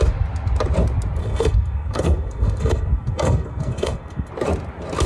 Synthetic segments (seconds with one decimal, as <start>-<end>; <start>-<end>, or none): 1.2-4.3